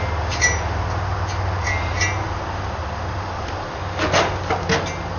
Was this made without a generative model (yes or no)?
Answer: yes